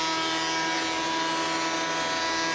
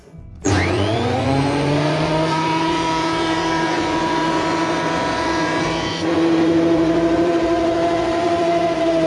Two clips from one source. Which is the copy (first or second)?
second